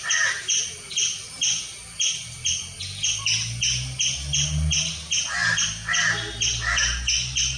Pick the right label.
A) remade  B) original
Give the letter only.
B